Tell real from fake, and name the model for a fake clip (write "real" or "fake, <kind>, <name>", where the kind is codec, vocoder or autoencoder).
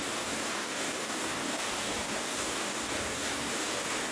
fake, codec, DAC